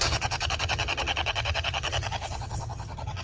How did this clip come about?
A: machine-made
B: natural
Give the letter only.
A